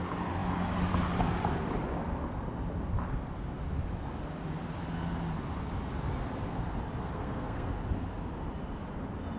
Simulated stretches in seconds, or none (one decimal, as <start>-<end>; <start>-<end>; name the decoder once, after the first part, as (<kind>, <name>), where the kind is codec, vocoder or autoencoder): 7.0-7.7 (codec, SNAC)